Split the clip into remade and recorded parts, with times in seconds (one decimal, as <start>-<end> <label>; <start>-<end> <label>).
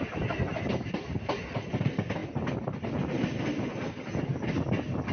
0.0-5.1 recorded